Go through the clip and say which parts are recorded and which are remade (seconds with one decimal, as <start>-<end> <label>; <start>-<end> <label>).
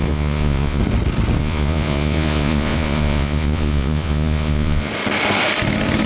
0.0-0.8 remade; 0.8-1.4 recorded; 1.4-4.9 remade; 4.9-6.1 recorded